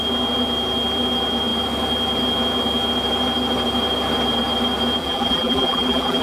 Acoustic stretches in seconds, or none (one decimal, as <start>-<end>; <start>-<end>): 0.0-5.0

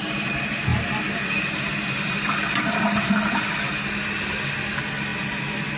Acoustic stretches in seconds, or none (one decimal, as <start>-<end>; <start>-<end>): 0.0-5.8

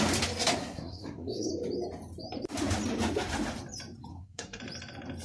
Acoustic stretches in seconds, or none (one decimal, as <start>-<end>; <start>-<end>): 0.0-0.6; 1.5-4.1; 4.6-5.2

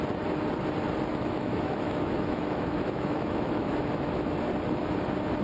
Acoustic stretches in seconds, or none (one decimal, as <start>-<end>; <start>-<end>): 0.0-1.1; 4.3-5.4

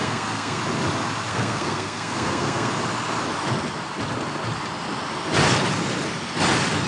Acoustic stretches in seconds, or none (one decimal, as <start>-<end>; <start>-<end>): 0.6-1.3; 2.7-6.9